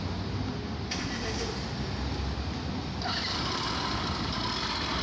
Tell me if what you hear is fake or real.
real